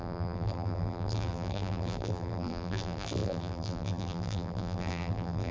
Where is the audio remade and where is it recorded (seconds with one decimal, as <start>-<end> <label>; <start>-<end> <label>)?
0.0-5.5 remade